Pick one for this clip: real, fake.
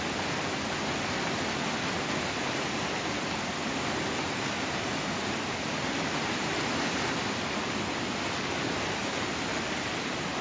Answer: real